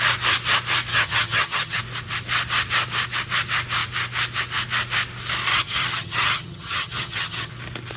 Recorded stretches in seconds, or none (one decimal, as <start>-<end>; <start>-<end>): 0.0-0.9; 1.8-5.5; 7.5-8.0